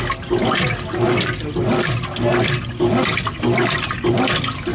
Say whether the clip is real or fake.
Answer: real